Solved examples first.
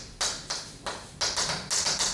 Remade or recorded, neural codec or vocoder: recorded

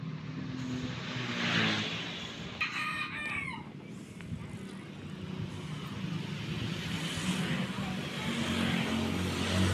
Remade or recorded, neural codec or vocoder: recorded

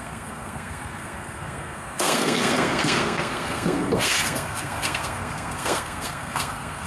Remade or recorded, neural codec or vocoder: remade, codec, SNAC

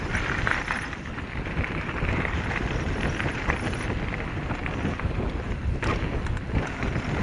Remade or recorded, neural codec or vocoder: recorded